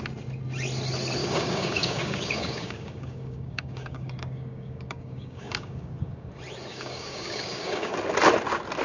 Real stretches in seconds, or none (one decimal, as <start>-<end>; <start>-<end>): 0.0-1.2; 6.3-6.7; 7.9-8.8